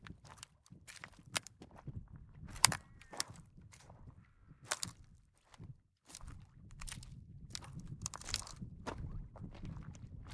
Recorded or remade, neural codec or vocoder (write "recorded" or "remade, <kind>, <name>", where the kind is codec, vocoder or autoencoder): remade, vocoder, BigVGAN v2